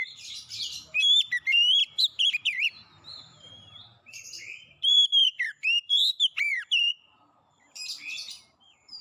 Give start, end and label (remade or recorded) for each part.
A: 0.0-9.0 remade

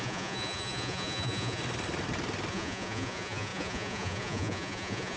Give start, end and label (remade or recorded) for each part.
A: 0.0-1.6 remade; 1.6-2.5 recorded; 2.5-5.2 remade

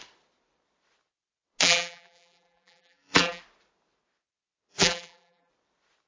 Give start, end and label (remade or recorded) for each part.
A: 0.0-1.6 recorded; 1.6-3.4 remade; 3.4-4.7 recorded; 4.7-5.5 remade; 5.5-6.1 recorded

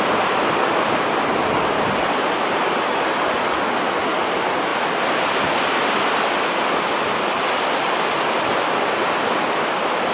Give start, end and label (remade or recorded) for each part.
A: 0.0-10.1 recorded

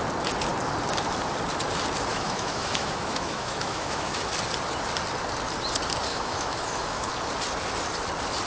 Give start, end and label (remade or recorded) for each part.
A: 0.0-2.1 recorded; 2.1-4.3 remade; 4.3-6.1 recorded; 6.1-7.1 remade; 7.1-8.5 recorded

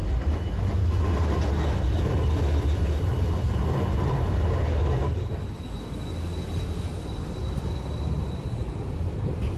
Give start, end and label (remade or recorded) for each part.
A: 0.0-9.6 recorded